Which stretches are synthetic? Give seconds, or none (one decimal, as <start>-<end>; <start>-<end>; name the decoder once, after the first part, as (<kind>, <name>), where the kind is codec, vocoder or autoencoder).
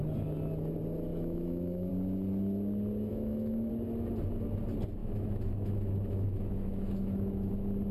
1.1-1.9 (autoencoder, DAC-VAE); 3.1-3.7; 5.0-7.5